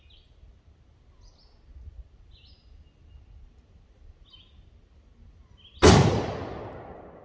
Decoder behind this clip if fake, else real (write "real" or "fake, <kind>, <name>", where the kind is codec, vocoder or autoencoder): real